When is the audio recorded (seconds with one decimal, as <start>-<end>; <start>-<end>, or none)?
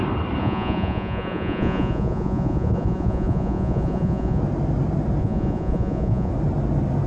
0.0-0.4; 4.4-5.2; 6.3-7.1